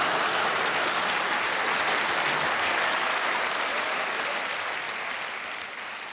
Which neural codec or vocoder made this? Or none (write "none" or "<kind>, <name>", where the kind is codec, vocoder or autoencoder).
none